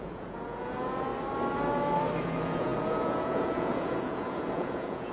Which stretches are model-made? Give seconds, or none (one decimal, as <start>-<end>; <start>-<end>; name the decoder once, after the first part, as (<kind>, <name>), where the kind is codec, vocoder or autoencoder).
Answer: 0.0-1.1 (vocoder, Vocos); 2.2-5.1